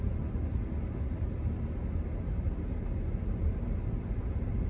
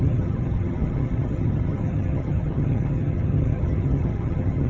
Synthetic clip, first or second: second